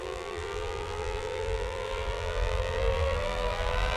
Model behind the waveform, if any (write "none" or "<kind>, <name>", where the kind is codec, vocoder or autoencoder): vocoder, BigVGAN v2